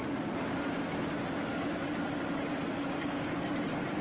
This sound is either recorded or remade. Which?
recorded